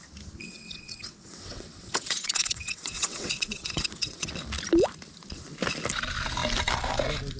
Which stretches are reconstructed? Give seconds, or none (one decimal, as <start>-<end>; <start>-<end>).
0.4-4.3